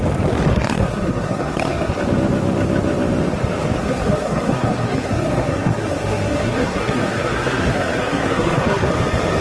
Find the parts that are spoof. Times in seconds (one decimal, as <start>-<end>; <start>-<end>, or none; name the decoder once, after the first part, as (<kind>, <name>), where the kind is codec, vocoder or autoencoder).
0.5-1.9 (codec, SNAC); 3.8-8.9

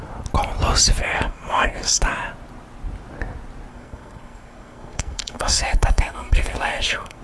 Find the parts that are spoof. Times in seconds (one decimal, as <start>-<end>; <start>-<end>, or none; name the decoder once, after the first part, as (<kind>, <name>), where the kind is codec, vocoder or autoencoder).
1.0-2.0 (codec, SNAC); 3.7-7.2

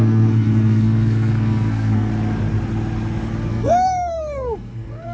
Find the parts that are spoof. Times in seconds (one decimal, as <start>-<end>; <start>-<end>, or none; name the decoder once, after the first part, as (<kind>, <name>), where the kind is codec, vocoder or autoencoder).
0.0-2.1 (codec, SNAC); 3.5-5.1

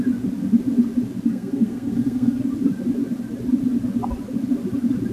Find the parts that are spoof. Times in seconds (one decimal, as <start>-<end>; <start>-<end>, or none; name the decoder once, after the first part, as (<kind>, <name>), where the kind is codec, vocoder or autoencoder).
1.3-2.4 (codec, SNAC)

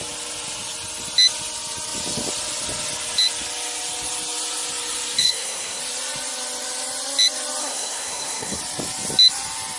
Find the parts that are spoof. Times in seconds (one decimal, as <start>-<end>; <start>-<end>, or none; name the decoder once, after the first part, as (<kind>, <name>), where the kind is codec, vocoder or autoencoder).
5.2-5.8 (codec, SNAC); 7.6-8.6

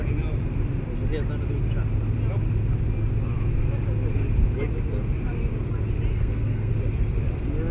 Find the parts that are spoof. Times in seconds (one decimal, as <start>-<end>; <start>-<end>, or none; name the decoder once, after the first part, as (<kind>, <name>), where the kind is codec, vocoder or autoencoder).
6.1-6.7 (codec, SNAC)